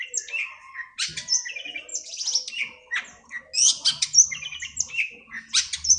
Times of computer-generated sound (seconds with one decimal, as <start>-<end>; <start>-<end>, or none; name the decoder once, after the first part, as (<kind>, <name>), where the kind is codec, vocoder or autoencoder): none